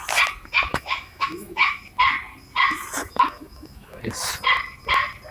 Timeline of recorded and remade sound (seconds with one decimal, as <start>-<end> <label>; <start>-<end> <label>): 0.0-0.7 recorded; 0.7-1.8 remade; 1.8-3.0 recorded; 3.0-4.0 remade; 4.0-5.3 recorded

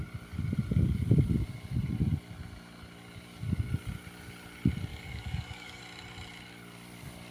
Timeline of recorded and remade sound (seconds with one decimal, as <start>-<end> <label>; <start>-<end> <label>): 0.0-4.9 recorded; 4.9-5.8 remade; 5.8-7.3 recorded

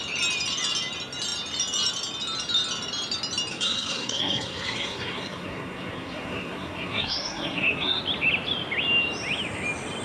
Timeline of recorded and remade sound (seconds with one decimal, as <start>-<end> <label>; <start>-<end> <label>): 0.0-3.5 recorded; 3.5-8.0 remade; 8.0-10.0 recorded

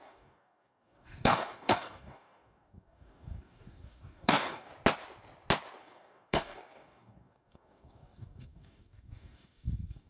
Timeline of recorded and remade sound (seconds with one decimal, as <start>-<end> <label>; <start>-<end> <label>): 0.0-4.7 remade; 4.7-5.8 recorded; 5.8-10.1 remade